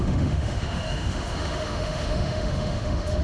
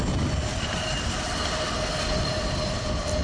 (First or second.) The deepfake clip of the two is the first